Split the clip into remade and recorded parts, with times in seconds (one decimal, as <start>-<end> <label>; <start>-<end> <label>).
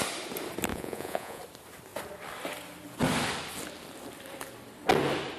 0.0-0.7 recorded; 0.7-1.4 remade; 1.4-5.4 recorded